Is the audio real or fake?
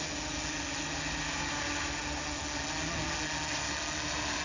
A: real